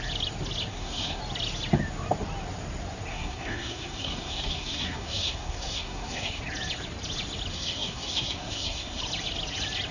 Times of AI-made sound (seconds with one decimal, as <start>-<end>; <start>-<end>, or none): 0.7-1.2; 3.1-6.4; 7.5-9.0